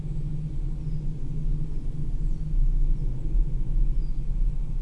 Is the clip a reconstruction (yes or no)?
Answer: no